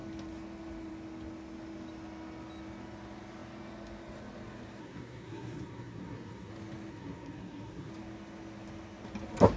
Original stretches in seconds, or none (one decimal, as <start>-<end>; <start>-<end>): 0.0-4.8; 6.5-6.9; 7.9-9.6